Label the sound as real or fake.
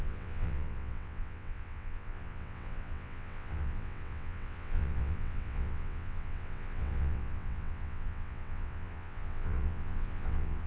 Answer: fake